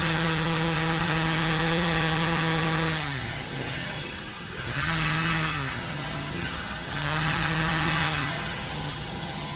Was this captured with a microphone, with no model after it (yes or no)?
no